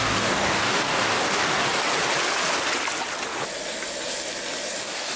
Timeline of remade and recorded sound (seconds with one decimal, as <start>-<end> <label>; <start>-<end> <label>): 0.0-1.7 remade; 1.7-4.8 recorded; 4.8-5.2 remade